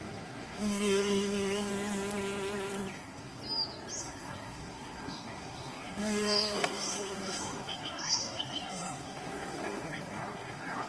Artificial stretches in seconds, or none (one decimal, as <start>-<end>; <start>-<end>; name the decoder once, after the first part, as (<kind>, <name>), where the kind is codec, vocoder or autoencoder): 0.0-1.7 (codec, SNAC); 2.9-3.4; 4.0-10.9